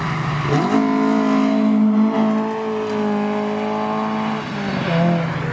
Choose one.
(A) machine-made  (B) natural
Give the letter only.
B